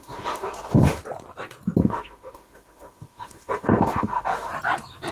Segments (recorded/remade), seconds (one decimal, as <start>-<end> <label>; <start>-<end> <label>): 0.0-1.0 remade; 1.0-1.8 recorded; 1.8-4.5 remade; 4.5-5.1 recorded